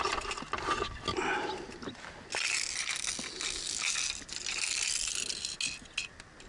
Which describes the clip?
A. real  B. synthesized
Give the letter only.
A